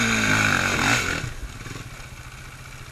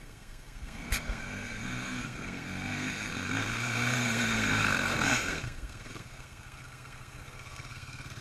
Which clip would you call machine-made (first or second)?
second